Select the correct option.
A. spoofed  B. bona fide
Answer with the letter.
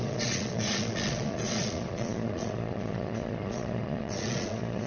A